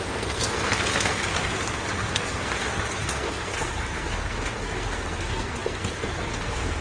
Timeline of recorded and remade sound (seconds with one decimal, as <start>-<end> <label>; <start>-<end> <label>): 0.0-6.8 remade